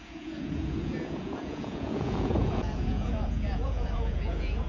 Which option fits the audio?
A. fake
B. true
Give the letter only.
A